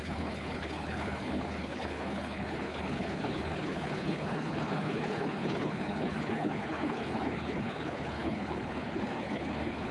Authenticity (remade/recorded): remade